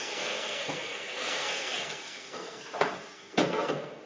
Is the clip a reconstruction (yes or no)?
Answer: yes